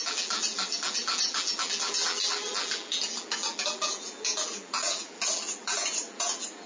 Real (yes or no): no